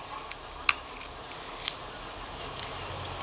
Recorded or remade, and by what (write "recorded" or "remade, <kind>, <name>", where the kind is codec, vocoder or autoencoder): recorded